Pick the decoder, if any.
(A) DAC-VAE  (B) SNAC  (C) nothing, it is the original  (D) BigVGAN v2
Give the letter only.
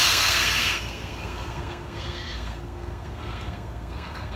B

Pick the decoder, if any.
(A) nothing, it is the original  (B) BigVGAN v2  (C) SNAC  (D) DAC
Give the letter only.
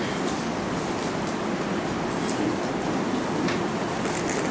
A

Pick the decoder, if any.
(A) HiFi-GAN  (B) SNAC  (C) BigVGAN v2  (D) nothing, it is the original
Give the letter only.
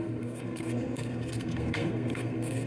B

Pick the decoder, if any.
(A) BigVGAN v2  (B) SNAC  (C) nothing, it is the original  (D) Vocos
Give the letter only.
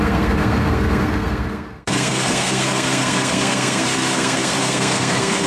B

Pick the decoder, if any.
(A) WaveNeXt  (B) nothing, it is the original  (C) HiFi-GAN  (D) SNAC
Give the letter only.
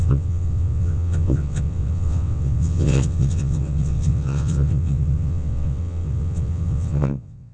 A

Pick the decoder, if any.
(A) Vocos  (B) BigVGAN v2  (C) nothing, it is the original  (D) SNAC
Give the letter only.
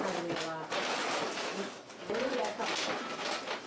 C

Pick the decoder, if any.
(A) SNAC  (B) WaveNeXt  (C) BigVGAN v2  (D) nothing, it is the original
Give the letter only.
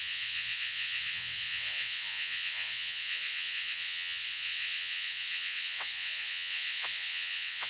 B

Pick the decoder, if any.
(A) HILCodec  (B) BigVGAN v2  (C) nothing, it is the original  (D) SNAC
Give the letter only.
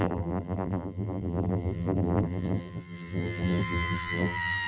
B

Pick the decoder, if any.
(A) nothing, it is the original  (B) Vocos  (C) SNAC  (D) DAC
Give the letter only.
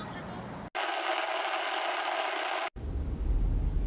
A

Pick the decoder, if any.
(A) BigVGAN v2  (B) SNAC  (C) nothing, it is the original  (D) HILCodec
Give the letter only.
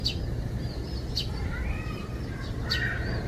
A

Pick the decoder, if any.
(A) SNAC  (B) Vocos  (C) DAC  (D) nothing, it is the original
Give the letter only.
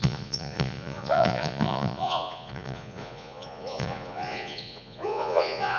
B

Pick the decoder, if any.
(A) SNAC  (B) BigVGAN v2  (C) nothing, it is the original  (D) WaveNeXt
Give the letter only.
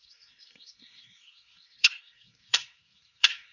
A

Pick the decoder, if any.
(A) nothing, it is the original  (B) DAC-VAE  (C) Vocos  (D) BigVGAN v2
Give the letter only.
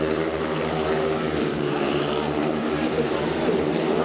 D